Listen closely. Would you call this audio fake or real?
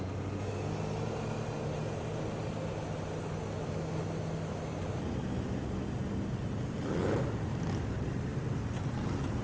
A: real